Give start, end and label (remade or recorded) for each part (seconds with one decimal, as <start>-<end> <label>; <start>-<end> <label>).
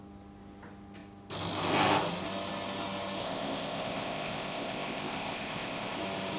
0.0-3.2 recorded; 3.2-6.0 remade; 6.0-6.4 recorded